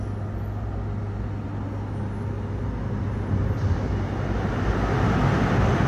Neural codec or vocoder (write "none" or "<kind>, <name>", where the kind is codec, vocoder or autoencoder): none